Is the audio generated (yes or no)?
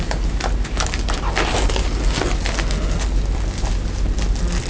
no